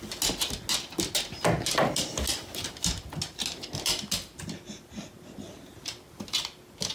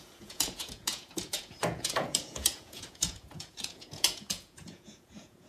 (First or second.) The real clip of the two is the first